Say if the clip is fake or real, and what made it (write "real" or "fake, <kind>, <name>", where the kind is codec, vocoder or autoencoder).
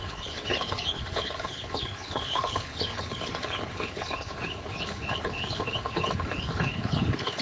fake, codec, HILCodec